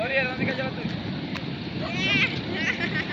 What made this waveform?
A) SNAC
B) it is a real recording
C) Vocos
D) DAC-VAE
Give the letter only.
B